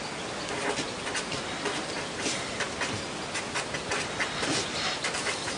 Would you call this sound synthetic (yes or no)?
no